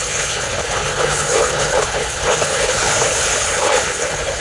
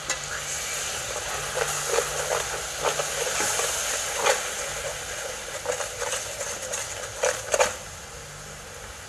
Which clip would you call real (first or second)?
second